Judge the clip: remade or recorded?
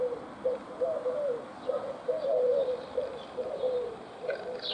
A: remade